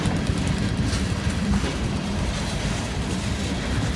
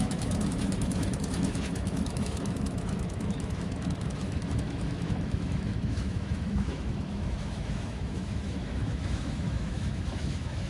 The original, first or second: first